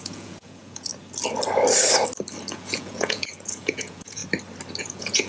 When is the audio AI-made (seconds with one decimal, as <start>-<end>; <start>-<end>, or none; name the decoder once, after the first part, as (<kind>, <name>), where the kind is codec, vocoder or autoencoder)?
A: 0.0-0.9 (vocoder, Vocos); 2.5-4.2; 4.8-5.3